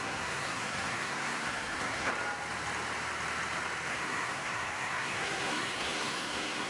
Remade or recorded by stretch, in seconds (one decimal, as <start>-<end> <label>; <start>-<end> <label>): 0.0-2.1 remade; 2.1-3.9 recorded; 3.9-6.7 remade